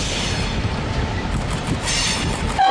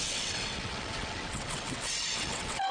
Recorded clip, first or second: first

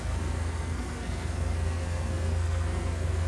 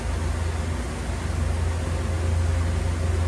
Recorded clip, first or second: second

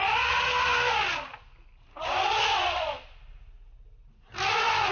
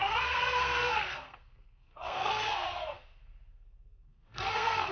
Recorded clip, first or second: first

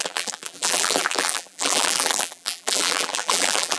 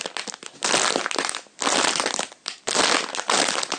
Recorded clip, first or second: second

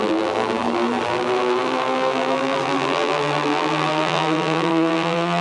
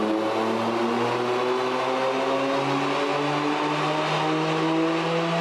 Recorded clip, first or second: second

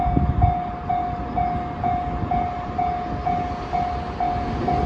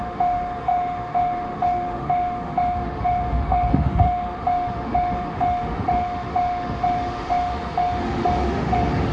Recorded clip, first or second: first